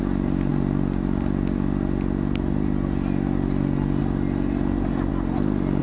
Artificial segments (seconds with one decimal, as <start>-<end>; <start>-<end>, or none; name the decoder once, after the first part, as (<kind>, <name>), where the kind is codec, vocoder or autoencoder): none